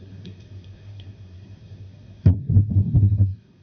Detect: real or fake fake